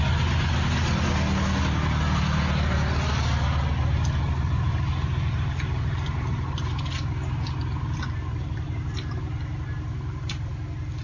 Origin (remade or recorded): recorded